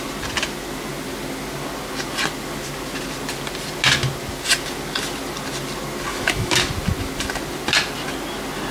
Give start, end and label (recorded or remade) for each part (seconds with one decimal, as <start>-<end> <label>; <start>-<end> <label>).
0.0-6.1 recorded; 6.1-6.6 remade; 6.6-8.7 recorded